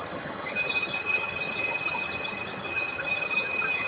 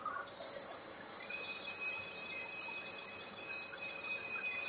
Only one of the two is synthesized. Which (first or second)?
first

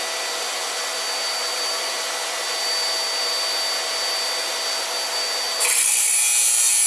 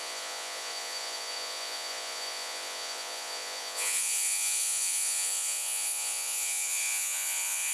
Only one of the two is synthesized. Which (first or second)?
second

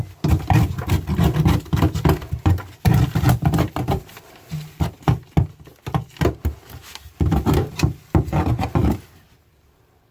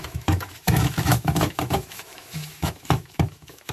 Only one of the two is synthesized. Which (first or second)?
second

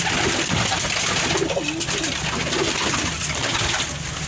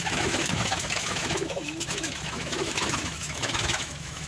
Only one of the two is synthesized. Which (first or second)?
second